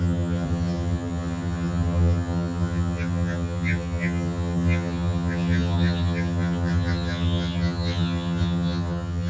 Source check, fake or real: fake